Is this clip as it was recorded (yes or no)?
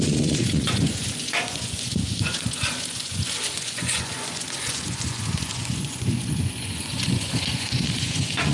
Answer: no